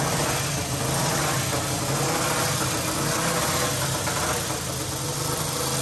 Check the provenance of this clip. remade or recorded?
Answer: recorded